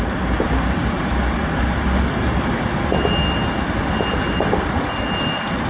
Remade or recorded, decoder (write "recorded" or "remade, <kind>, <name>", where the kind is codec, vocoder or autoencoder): recorded